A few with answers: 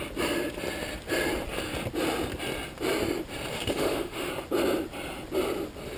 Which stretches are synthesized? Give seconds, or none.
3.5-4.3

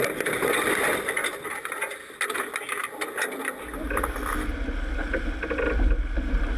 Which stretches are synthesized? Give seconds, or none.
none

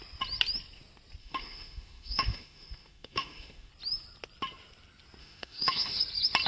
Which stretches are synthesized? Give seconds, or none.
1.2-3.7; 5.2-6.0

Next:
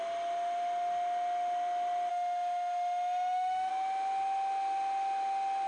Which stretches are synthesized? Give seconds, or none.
2.1-3.7

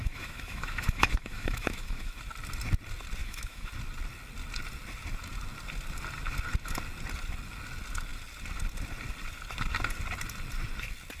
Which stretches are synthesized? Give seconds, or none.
0.0-2.2; 3.2-3.7

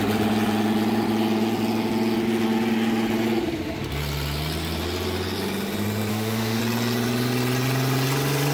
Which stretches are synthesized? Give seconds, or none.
6.1-6.6

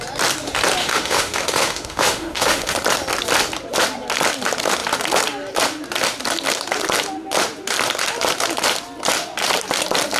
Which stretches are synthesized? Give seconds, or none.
0.8-2.7